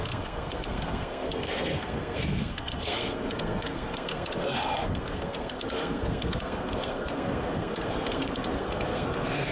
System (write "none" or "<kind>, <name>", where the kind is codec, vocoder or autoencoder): codec, SNAC